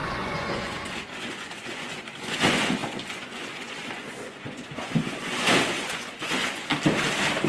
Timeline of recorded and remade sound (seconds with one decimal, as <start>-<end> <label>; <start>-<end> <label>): 0.0-6.7 remade; 6.7-7.5 recorded